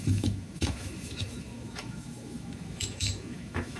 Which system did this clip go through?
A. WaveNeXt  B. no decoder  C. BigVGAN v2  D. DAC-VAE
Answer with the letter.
D